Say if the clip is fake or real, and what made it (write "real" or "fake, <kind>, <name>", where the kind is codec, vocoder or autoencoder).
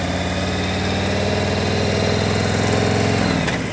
real